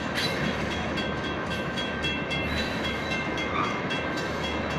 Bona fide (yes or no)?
no